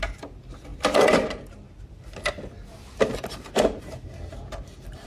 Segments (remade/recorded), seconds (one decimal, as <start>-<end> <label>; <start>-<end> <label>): 0.0-5.1 recorded

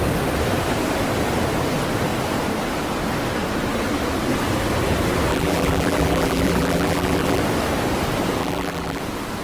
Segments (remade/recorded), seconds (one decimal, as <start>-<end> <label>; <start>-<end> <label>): 0.0-5.3 recorded; 5.3-7.4 remade; 7.4-8.4 recorded; 8.4-9.0 remade; 9.0-9.4 recorded